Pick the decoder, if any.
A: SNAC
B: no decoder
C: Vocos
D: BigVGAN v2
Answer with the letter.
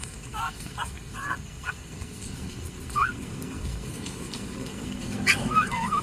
A